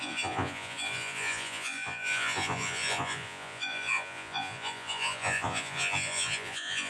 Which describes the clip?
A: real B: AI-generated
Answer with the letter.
B